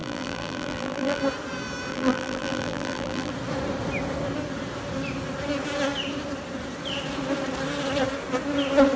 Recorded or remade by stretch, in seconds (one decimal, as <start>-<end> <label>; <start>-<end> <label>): 0.0-1.2 remade; 1.2-1.9 recorded; 1.9-3.3 remade; 3.3-9.0 recorded